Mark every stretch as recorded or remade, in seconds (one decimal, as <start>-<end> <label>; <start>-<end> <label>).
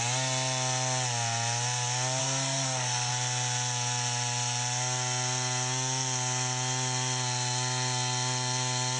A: 0.0-2.2 recorded; 2.2-3.1 remade; 3.1-9.0 recorded